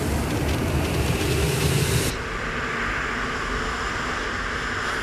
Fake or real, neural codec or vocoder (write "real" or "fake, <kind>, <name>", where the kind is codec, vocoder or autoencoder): real